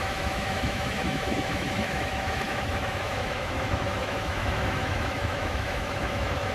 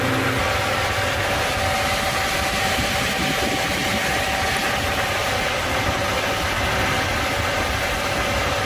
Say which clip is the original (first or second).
second